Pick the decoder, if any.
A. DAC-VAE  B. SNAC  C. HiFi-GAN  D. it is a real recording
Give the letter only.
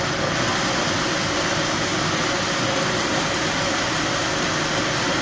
D